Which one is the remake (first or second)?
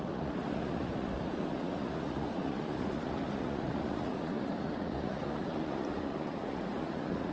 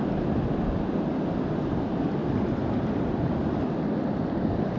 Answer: first